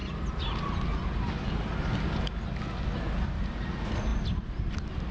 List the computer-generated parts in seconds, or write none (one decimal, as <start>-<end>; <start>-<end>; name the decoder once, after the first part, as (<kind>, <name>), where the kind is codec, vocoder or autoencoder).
none